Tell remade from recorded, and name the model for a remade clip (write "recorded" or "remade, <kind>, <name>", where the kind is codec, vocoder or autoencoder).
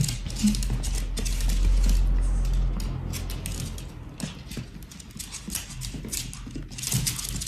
recorded